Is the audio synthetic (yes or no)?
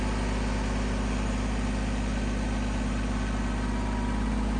no